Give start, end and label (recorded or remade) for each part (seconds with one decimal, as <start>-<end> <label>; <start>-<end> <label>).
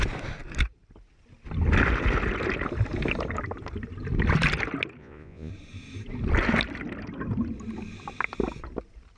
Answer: 0.0-5.0 recorded; 5.0-5.5 remade; 5.5-9.2 recorded